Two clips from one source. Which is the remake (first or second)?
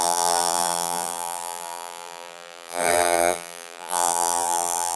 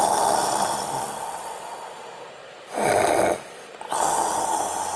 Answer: first